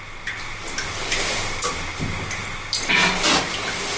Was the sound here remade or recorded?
recorded